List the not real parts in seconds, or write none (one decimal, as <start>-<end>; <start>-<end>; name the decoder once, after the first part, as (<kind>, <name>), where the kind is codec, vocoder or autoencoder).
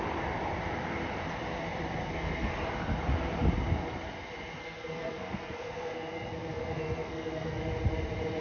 2.0-2.5 (codec, SNAC); 4.6-7.6